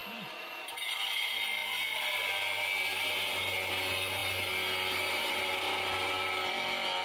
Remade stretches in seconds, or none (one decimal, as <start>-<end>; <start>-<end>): none